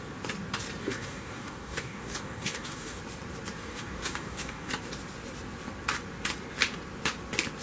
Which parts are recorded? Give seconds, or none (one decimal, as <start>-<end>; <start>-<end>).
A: 0.0-0.8; 3.0-3.6; 4.7-7.6